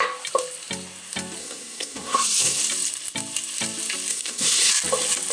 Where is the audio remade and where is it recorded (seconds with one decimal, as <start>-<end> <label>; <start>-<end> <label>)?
0.0-1.4 recorded; 1.4-2.6 remade; 2.6-4.1 recorded; 4.1-4.7 remade; 4.7-5.3 recorded

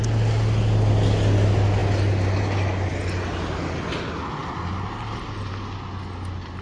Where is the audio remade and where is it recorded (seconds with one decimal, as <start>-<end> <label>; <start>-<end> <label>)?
0.0-6.6 recorded

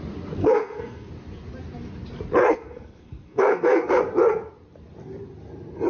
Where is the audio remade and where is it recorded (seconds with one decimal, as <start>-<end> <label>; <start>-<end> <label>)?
0.0-0.4 recorded; 0.4-1.1 remade; 1.1-2.4 recorded; 2.4-4.0 remade; 4.0-5.9 recorded

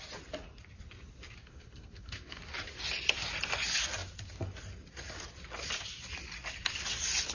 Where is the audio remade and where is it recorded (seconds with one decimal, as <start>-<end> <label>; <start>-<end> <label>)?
0.0-1.4 recorded; 1.4-2.4 remade; 2.4-7.3 recorded

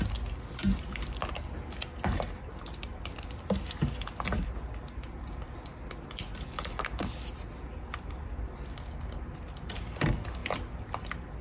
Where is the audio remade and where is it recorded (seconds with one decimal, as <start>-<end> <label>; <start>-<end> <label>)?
0.0-11.4 recorded

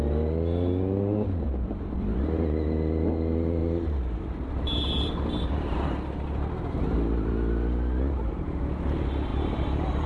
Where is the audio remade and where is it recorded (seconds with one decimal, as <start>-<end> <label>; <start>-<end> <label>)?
0.0-10.1 recorded